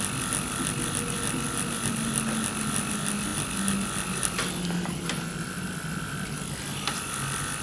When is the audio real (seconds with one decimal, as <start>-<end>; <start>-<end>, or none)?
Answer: 0.0-7.6